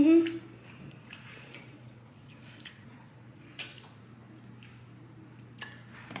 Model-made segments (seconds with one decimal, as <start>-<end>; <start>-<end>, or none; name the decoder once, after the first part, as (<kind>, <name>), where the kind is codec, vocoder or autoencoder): 1.0-4.0 (vocoder, Vocos)